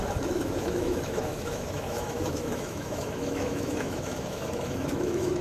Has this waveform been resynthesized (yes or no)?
yes